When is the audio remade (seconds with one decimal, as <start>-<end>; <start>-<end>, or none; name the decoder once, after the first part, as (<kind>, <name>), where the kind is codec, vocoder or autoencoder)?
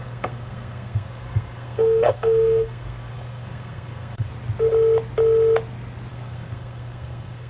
0.0-4.3 (codec, SNAC); 6.1-7.5